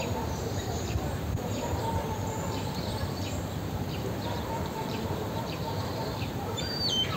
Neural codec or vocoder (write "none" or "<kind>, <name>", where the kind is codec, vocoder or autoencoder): vocoder, BigVGAN v2